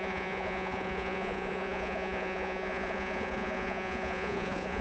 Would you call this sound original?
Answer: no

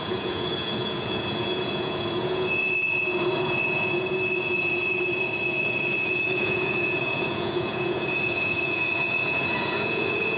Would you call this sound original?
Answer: no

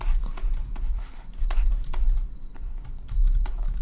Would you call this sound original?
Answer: no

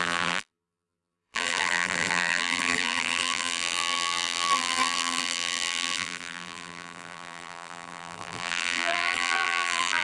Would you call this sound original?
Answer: no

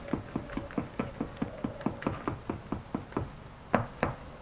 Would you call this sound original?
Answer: yes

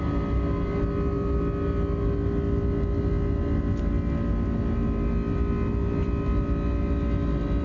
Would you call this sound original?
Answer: yes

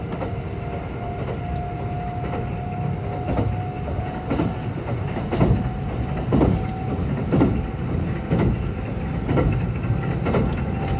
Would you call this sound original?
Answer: yes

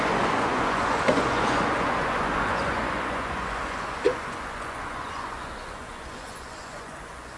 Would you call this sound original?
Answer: no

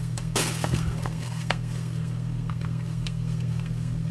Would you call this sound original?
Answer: no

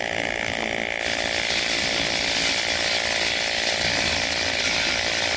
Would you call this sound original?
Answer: yes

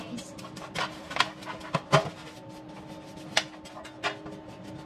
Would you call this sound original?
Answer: yes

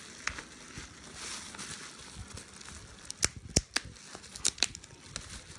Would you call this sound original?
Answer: yes